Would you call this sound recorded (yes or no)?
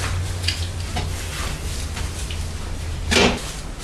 yes